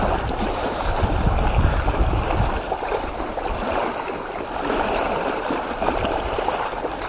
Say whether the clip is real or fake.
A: real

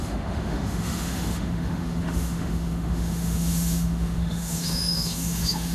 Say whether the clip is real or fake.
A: fake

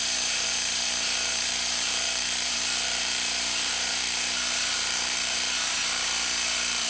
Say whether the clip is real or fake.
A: fake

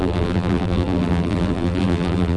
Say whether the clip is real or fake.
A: fake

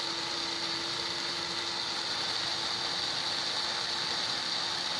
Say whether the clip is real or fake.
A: real